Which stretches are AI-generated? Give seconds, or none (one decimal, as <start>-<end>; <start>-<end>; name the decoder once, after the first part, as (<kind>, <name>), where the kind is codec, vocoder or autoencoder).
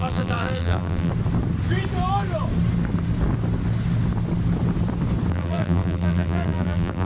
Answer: 0.0-1.1 (vocoder, BigVGAN v2); 5.3-7.1